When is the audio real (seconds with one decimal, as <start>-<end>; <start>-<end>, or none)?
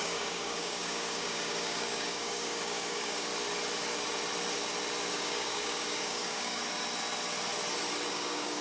3.3-5.0; 6.6-8.1